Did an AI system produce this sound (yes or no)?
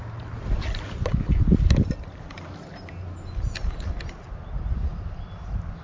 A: no